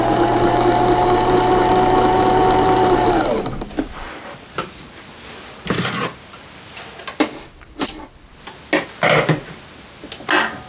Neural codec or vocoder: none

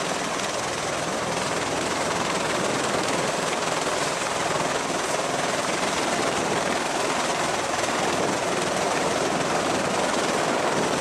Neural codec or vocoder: none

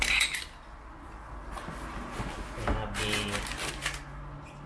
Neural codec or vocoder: none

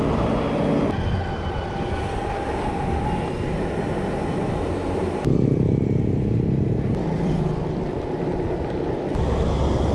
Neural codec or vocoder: none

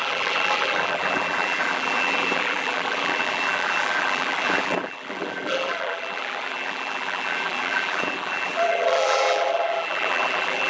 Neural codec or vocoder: vocoder, BigVGAN v2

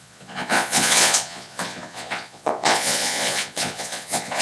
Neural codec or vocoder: vocoder, Vocos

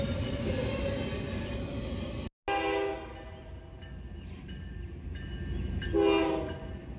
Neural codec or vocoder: none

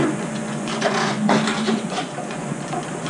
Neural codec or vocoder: vocoder, Vocos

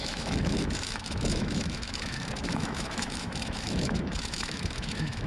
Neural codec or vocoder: autoencoder, DAC-VAE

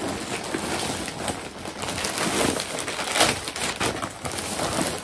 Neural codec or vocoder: none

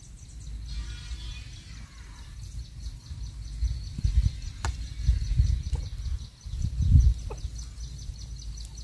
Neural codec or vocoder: none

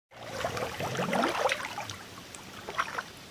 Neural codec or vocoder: none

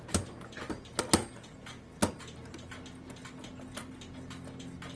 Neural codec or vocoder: none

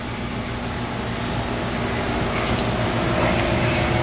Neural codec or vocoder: none